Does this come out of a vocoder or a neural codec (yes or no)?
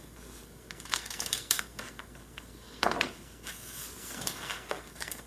yes